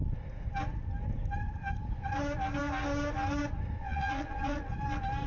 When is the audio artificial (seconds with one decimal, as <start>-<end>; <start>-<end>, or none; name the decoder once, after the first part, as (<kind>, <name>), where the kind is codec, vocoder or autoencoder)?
3.8-4.6 (vocoder, Vocos)